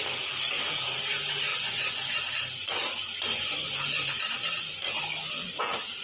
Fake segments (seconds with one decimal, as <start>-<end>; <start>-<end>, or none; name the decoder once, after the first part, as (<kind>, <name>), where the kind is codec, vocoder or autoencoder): 1.5-2.3 (vocoder, Vocos); 3.3-4.2